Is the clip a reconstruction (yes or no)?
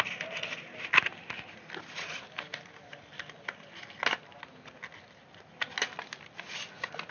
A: no